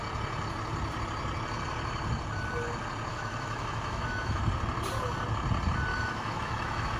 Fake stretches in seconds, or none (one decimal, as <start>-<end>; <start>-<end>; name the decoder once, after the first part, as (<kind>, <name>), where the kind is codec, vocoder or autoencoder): 3.1-4.4 (autoencoder, DAC-VAE); 5.9-7.0